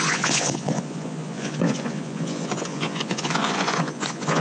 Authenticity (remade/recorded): remade